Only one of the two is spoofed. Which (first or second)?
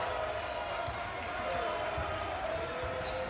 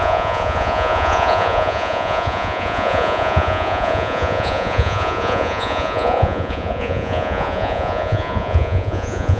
second